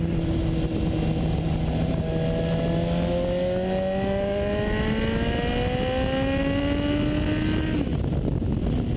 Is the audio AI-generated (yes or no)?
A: no